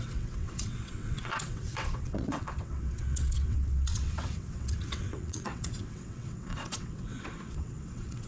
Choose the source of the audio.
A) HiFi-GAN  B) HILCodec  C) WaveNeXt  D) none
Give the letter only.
C